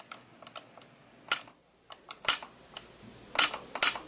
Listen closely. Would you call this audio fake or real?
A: real